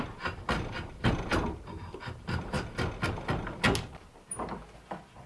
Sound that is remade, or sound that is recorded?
recorded